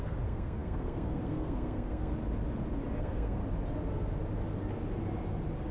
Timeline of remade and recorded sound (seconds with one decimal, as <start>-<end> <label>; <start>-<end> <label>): 0.0-2.1 remade; 2.1-3.0 recorded; 3.0-3.4 remade; 3.4-5.7 recorded